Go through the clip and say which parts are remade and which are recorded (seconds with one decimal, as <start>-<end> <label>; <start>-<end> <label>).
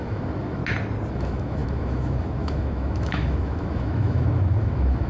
0.0-0.6 remade; 0.6-1.1 recorded; 1.1-5.1 remade